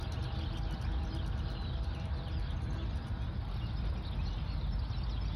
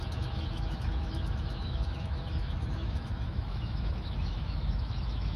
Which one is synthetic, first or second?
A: second